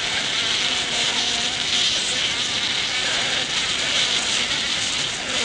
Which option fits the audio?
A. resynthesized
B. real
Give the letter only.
B